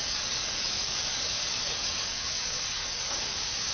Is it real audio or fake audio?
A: fake